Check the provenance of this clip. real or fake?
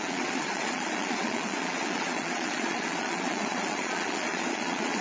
fake